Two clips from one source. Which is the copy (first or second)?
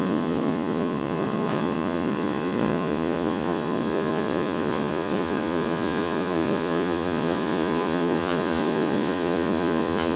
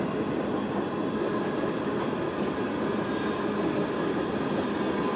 first